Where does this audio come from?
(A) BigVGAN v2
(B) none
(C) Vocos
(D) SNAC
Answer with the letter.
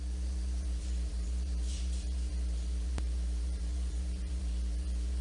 A